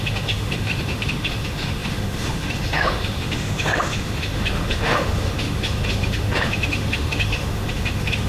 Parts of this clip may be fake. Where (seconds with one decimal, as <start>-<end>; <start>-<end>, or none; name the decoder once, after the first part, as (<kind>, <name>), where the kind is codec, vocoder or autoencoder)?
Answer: 0.0-8.3 (autoencoder, DAC-VAE)